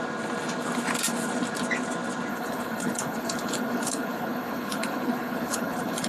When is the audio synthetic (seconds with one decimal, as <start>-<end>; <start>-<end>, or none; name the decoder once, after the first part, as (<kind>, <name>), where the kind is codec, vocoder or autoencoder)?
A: 2.3-6.1 (codec, HILCodec)